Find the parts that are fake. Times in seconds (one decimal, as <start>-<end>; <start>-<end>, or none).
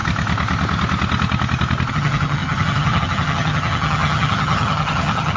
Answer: 1.9-5.4